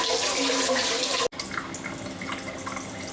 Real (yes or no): yes